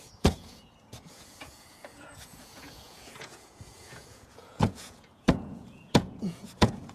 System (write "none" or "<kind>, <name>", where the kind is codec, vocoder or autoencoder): vocoder, Vocos